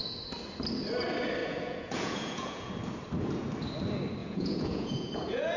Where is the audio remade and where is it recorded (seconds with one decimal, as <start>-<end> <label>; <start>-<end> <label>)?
0.0-1.4 recorded; 1.4-2.7 remade; 2.7-4.2 recorded; 4.2-5.6 remade